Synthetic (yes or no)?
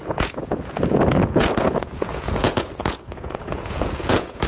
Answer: yes